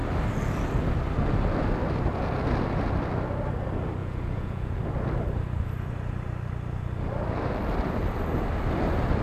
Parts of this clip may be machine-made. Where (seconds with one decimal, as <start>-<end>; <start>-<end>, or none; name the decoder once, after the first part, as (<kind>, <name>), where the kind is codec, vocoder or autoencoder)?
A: 4.0-4.8 (vocoder, Vocos)